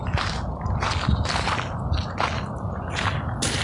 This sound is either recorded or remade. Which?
recorded